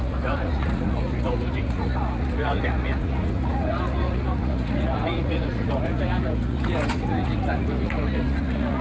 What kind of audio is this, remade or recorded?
remade